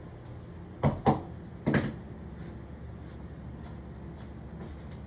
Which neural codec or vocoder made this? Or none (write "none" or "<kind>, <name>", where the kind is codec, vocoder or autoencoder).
none